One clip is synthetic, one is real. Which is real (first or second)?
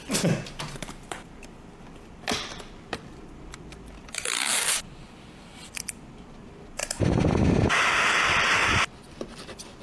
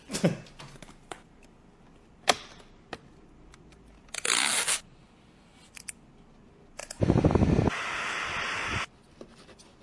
second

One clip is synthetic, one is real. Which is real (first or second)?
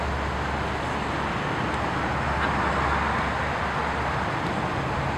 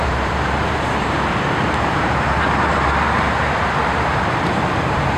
first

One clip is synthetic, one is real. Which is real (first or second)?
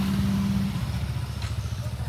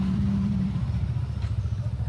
first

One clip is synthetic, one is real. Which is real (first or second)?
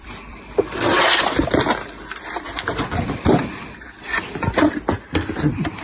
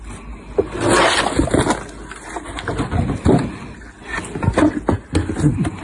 second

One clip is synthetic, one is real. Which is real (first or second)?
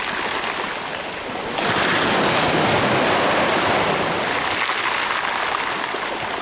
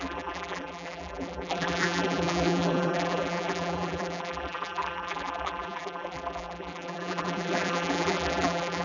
first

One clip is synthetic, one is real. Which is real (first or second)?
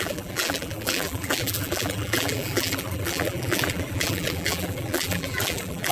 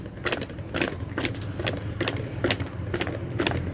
second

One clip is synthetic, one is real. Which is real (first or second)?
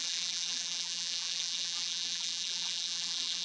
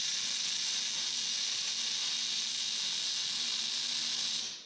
second